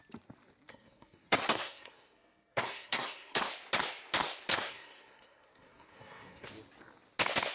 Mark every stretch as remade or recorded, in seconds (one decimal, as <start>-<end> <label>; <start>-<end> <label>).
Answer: 0.0-0.7 recorded; 0.7-3.5 remade; 3.5-4.5 recorded; 4.5-6.5 remade; 6.5-7.5 recorded